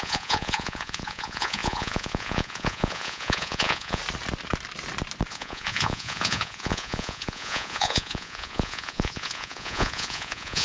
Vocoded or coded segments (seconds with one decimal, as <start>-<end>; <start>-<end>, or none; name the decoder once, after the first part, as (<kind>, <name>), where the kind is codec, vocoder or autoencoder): 0.0-4.0 (vocoder, Vocos); 5.3-10.6